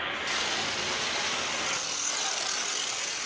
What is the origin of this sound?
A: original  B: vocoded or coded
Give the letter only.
A